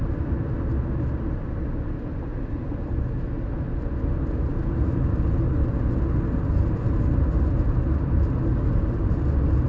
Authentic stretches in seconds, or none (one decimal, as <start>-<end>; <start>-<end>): 0.0-9.7